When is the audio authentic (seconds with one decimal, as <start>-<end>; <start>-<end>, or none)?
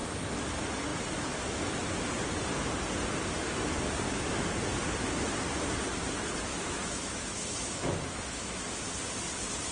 0.5-6.5; 8.6-9.7